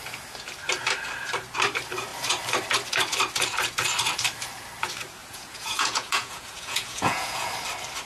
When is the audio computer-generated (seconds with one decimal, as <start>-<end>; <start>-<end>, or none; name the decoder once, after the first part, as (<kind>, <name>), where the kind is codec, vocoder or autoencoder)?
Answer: 5.2-7.5 (vocoder, Vocos)